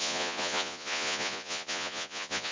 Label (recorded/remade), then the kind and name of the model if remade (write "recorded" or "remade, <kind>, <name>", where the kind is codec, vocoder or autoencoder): remade, vocoder, Vocos